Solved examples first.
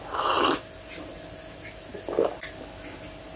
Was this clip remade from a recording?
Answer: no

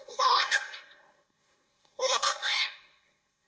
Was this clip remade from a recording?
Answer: yes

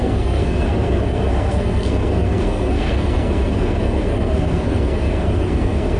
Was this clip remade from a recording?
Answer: yes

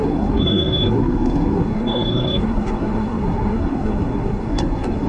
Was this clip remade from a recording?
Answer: yes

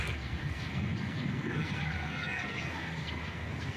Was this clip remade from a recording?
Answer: yes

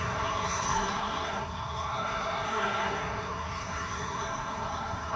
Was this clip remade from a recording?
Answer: yes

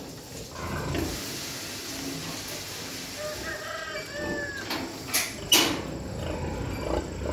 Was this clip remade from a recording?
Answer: no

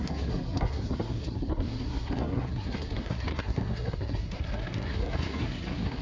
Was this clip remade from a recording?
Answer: yes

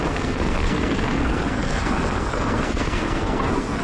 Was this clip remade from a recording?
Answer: yes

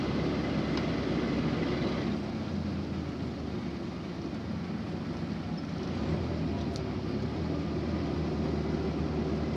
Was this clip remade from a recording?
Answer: no